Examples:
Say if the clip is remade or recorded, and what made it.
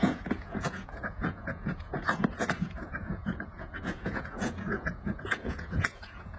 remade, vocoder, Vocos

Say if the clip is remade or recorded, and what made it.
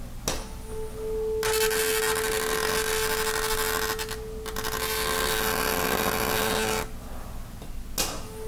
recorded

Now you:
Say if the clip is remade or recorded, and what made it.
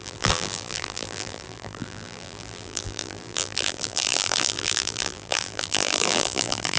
remade, vocoder, BigVGAN v2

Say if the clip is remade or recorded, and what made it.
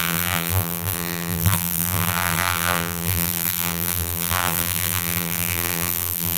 remade, vocoder, BigVGAN v2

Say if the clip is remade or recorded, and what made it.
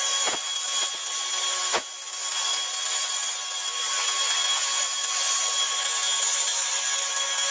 recorded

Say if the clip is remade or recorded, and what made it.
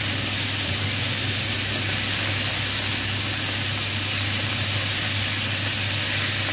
recorded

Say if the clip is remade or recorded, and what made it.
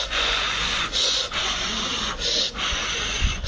remade, vocoder, Vocos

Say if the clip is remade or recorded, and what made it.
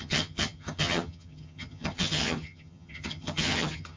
remade, vocoder, HiFi-GAN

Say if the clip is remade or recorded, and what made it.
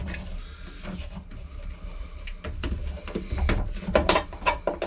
recorded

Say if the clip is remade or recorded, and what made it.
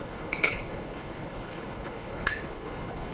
remade, codec, HILCodec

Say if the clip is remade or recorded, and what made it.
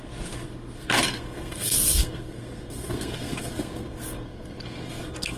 remade, codec, SNAC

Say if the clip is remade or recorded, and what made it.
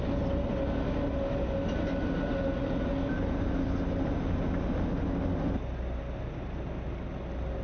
recorded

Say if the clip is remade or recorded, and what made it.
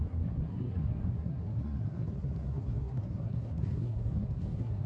remade, codec, SNAC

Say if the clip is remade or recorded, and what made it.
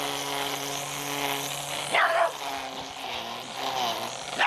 recorded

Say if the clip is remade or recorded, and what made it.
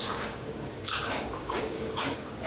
remade, codec, DAC